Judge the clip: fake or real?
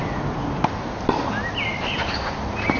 real